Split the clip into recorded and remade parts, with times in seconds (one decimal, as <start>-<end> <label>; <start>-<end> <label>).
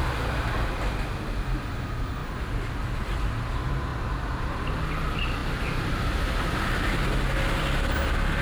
0.0-2.2 recorded; 2.2-3.3 remade; 3.3-8.4 recorded